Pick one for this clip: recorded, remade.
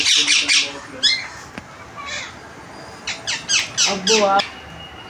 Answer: recorded